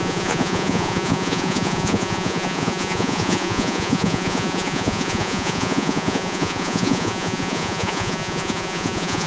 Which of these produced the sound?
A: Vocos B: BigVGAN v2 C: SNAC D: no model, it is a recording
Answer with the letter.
A